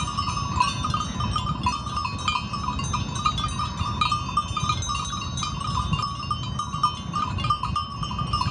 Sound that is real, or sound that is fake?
real